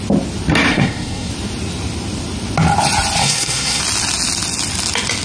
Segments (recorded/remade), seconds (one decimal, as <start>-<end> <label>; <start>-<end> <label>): 0.0-0.7 recorded; 0.7-1.3 remade; 1.3-3.2 recorded; 3.2-3.8 remade; 3.8-5.2 recorded